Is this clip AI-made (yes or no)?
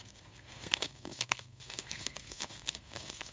yes